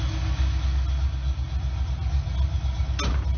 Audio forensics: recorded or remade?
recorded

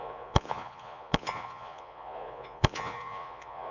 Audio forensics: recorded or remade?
remade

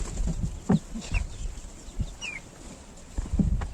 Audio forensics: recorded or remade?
recorded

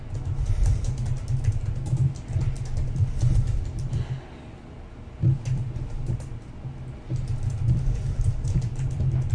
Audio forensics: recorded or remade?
recorded